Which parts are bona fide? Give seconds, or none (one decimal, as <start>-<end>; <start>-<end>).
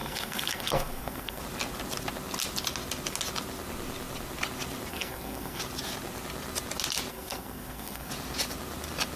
1.4-4.9; 5.6-7.1; 8.1-9.2